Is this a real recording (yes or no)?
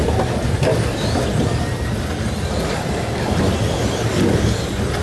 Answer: no